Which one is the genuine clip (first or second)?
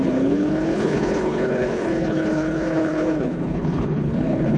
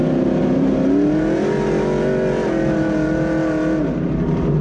second